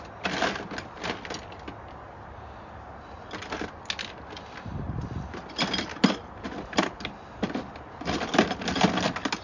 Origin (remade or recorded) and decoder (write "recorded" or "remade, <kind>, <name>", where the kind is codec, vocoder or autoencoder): recorded